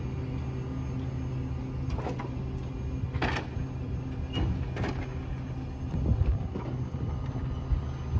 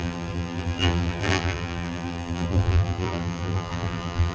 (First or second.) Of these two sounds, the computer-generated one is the second